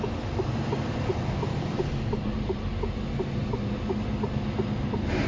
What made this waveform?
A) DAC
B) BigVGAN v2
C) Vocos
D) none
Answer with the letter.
D